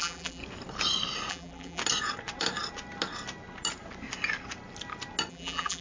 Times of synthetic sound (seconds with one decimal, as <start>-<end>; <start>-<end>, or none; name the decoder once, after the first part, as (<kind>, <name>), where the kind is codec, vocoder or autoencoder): 0.0-0.4 (vocoder, BigVGAN v2); 1.3-1.8; 5.3-5.8